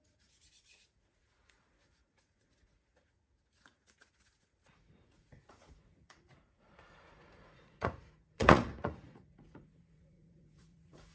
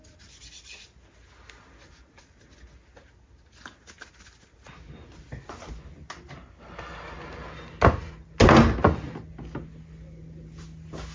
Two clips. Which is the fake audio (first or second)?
first